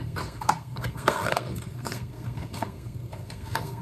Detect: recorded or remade remade